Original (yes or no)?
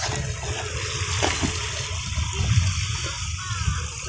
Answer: yes